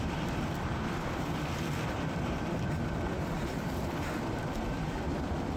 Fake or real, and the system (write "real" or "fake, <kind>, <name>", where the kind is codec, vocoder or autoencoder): real